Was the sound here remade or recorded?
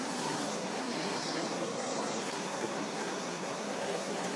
remade